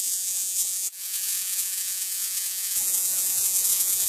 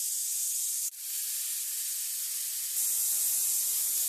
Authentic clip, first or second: second